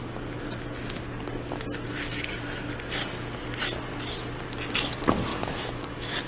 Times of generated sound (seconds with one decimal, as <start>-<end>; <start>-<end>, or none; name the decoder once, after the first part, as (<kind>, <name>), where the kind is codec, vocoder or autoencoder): 5.3-6.3 (autoencoder, DAC-VAE)